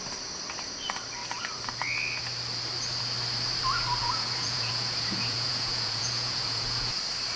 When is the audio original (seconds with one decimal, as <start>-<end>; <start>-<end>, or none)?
0.0-4.0; 6.9-7.4